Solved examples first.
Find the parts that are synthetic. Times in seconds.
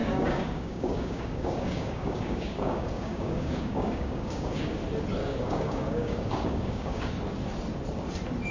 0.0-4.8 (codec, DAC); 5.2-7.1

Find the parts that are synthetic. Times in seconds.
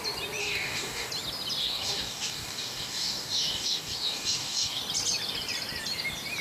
0.4-1.1 (codec, DAC); 1.6-4.8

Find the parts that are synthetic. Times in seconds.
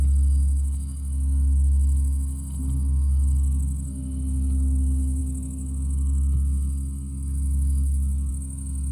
none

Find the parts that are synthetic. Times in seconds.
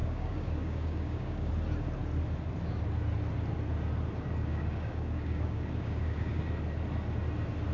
0.0-1.5 (codec, DAC); 4.4-6.4